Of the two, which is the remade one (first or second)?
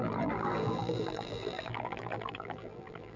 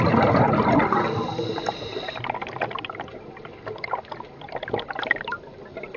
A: first